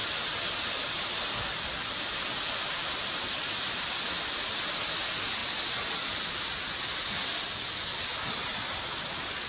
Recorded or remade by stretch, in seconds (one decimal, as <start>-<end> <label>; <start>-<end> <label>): 0.0-9.5 recorded